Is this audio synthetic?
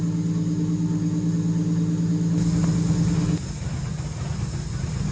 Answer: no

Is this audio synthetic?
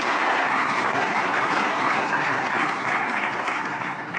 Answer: yes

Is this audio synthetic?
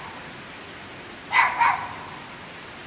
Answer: no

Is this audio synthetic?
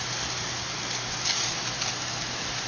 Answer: no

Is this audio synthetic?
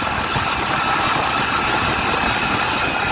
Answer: no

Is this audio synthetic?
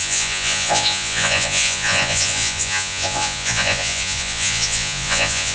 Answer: yes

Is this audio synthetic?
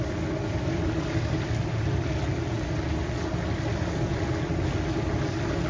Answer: no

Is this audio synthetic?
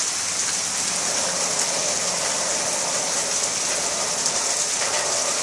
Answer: no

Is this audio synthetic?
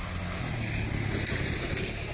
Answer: no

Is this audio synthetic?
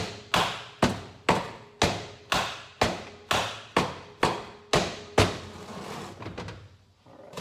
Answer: no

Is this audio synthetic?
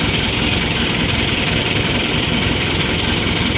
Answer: yes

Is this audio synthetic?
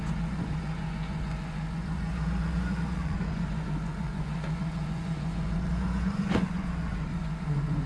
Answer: yes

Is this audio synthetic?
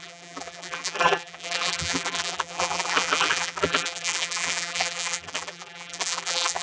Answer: yes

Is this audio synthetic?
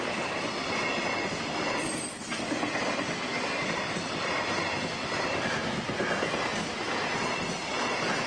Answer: no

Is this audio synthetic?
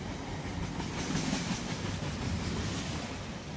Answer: no